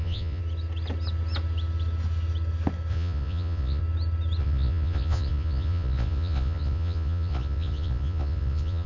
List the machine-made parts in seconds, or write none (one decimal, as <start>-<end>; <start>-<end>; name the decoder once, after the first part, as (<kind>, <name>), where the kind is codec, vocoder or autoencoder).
0.0-0.4 (vocoder, Vocos); 2.9-3.8; 4.4-8.9